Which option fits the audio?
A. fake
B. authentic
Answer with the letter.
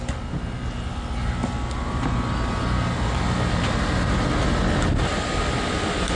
B